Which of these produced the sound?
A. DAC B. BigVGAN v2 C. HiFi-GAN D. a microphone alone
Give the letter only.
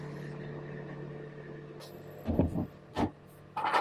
D